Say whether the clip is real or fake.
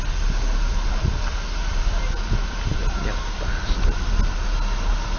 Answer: real